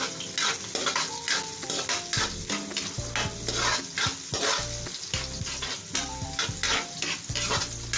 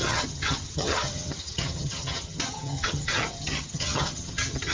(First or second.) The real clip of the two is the first